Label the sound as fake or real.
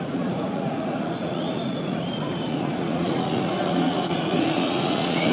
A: fake